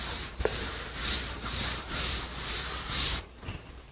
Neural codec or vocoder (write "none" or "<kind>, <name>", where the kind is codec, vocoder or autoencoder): vocoder, BigVGAN v2